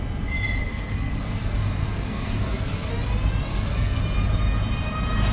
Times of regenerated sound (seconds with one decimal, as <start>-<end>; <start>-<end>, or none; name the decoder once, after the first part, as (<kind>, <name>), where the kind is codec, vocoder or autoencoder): 0.6-1.2 (codec, SNAC); 1.8-2.9; 3.5-4.0